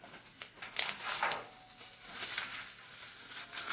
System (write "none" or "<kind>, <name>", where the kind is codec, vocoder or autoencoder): none